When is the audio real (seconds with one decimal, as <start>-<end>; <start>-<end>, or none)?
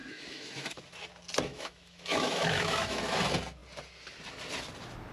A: 0.8-1.5; 3.0-5.1